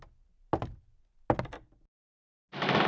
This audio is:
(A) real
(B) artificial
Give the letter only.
A